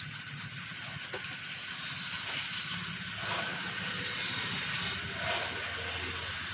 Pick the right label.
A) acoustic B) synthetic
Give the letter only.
A